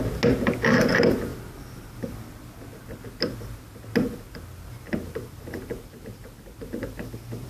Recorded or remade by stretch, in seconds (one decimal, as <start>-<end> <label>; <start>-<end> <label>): 0.0-7.5 recorded